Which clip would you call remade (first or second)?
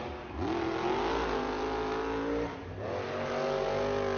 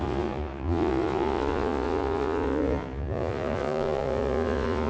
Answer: second